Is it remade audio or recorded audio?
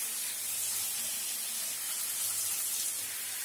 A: recorded